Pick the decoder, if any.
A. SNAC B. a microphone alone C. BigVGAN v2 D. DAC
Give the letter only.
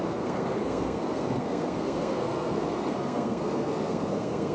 A